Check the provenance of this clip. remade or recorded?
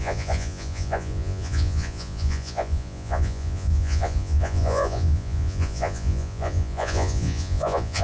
remade